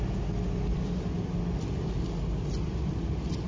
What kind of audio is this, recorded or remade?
recorded